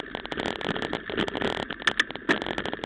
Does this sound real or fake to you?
real